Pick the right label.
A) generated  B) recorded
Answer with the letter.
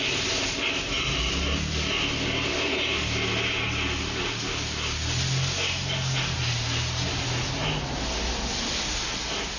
B